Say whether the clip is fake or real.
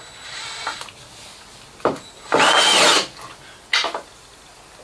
real